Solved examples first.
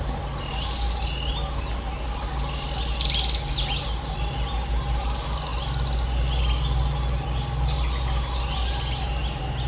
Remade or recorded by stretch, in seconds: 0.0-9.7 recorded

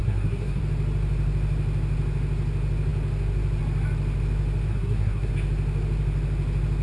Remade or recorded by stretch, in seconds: 0.0-0.6 remade; 0.6-4.7 recorded; 4.7-5.3 remade; 5.3-6.8 recorded

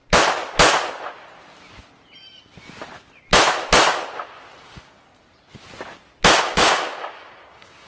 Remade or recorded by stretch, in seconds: 0.0-4.6 recorded; 4.6-5.1 remade; 5.1-6.4 recorded; 6.4-7.9 remade

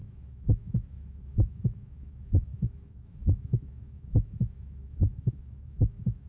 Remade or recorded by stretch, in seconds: 0.0-6.3 remade